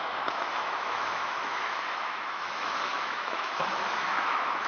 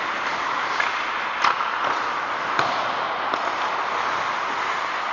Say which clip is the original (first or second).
second